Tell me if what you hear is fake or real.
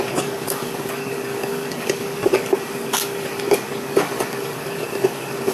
fake